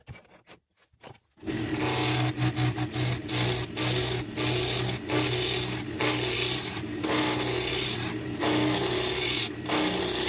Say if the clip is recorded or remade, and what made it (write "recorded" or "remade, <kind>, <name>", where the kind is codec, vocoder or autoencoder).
recorded